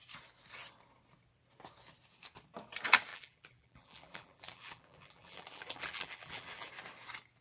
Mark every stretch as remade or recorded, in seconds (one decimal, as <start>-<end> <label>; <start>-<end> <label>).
0.0-3.1 recorded; 3.1-6.7 remade; 6.7-7.4 recorded